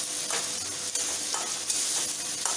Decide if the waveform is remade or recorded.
recorded